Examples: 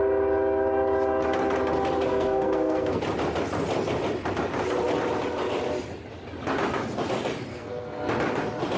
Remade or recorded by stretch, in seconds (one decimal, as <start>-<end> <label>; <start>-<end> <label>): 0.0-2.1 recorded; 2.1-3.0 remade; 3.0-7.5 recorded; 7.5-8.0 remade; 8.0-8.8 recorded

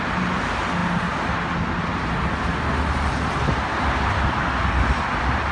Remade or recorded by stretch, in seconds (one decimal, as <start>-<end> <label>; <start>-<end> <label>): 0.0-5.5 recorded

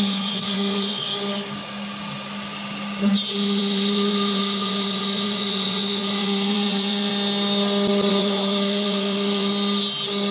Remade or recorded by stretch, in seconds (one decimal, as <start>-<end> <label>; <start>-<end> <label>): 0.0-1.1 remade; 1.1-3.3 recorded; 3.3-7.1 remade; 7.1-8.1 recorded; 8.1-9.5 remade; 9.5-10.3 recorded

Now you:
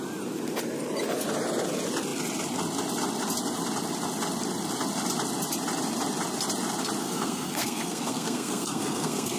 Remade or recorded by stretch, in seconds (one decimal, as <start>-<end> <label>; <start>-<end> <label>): 0.0-7.0 recorded; 7.0-9.4 remade